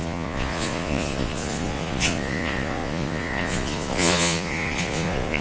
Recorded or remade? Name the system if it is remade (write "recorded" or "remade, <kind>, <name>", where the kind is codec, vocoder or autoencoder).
remade, vocoder, Vocos